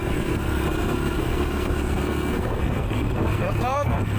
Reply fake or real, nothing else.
fake